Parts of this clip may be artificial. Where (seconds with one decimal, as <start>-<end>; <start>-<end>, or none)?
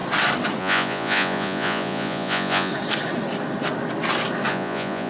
0.6-2.7; 4.5-5.1